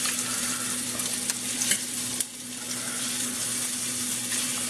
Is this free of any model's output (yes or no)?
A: yes